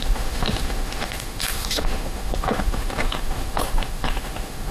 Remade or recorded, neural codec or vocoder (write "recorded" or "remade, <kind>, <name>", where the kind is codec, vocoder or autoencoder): remade, autoencoder, DAC-VAE